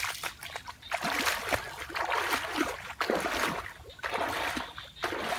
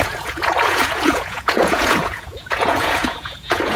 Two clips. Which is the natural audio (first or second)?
first